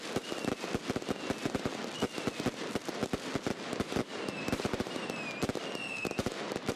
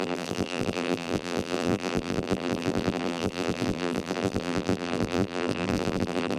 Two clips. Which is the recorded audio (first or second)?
first